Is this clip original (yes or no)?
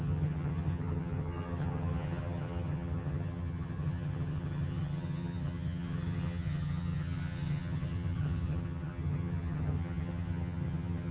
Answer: no